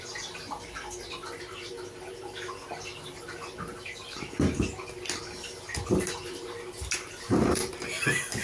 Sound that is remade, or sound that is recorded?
recorded